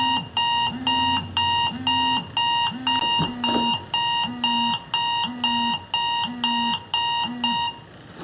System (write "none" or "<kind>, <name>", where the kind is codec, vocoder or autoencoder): none